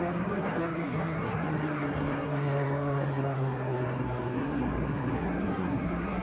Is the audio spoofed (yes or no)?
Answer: yes